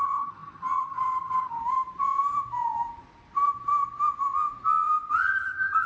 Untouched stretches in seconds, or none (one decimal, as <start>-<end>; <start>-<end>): 1.6-5.1